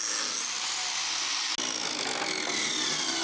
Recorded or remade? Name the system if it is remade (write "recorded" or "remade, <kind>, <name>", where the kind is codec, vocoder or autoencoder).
recorded